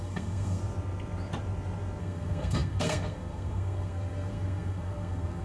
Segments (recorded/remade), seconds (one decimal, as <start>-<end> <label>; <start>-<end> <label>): 0.0-0.6 remade; 0.6-2.0 recorded; 2.0-5.4 remade